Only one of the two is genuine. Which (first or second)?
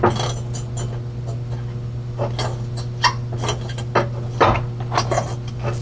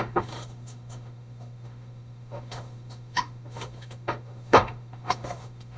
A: first